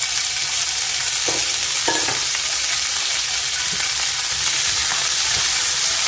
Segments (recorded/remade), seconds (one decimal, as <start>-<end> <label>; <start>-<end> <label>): 0.0-6.1 recorded